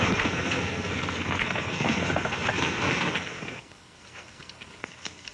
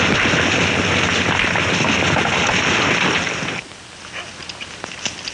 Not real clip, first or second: first